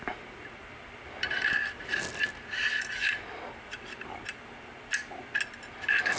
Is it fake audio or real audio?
real